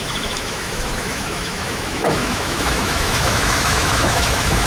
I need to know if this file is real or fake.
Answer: fake